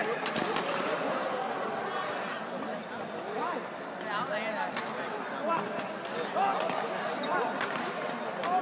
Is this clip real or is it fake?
real